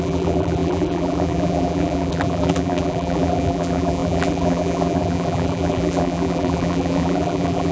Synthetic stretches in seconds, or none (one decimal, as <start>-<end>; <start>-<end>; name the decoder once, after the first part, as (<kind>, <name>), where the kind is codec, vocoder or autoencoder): 0.0-7.7 (vocoder, BigVGAN v2)